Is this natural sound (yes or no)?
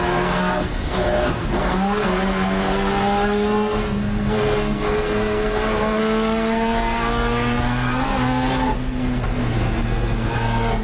no